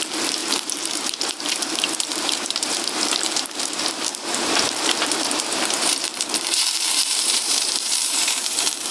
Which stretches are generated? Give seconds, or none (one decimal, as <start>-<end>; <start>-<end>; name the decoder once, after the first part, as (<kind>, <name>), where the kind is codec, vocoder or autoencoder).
0.0-8.9 (vocoder, BigVGAN v2)